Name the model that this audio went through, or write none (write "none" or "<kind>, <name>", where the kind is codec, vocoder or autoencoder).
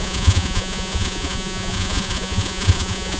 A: vocoder, Vocos